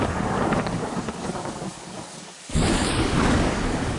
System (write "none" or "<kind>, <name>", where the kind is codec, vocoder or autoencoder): codec, DAC